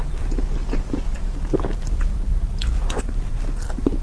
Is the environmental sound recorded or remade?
recorded